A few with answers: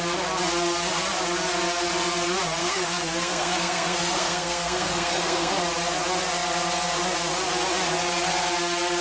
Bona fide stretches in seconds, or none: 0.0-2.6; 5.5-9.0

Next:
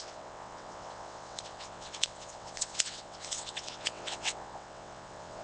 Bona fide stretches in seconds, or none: none

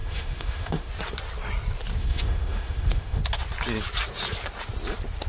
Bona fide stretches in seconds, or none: 0.9-2.0; 3.2-5.3

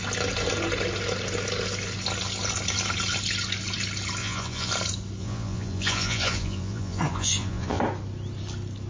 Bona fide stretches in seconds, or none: 0.0-4.2; 4.7-5.2; 7.8-8.9

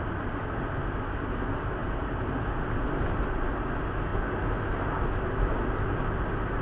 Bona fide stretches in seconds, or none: 0.0-6.6

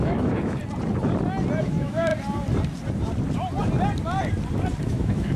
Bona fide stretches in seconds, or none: 0.6-1.6; 2.1-4.8

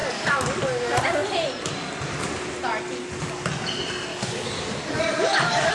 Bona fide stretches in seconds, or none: 0.6-4.1